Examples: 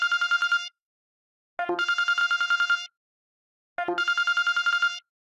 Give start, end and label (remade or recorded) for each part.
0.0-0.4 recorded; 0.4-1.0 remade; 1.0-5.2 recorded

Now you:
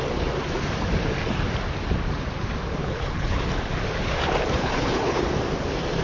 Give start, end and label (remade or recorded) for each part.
0.0-2.8 recorded; 2.8-3.4 remade; 3.4-4.6 recorded; 4.6-5.2 remade; 5.2-6.0 recorded

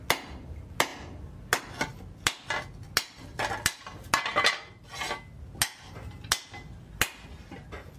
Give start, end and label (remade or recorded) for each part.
0.0-8.0 recorded